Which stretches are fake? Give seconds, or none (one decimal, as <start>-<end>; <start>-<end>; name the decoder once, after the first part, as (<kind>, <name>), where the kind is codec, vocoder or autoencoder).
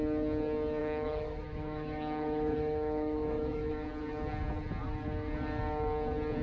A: 0.8-3.7 (autoencoder, DAC-VAE)